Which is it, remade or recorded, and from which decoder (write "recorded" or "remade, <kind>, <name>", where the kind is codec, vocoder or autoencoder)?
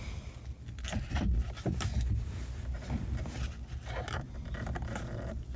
recorded